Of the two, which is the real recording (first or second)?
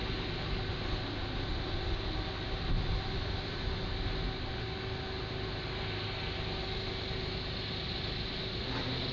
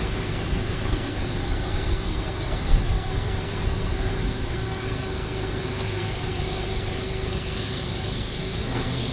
first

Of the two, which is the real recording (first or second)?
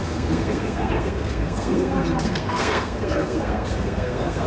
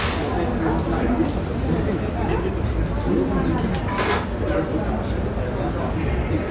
second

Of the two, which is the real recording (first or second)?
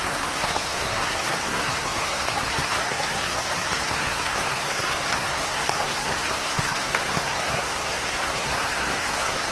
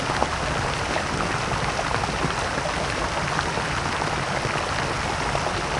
second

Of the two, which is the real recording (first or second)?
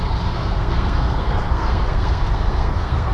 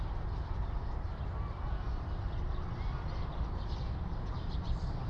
second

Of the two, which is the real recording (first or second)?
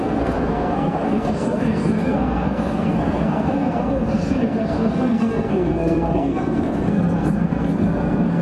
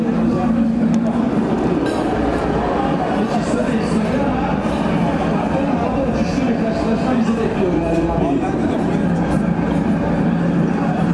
second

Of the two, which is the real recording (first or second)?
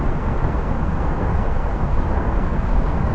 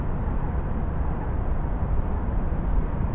second